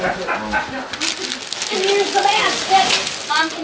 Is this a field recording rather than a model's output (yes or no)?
yes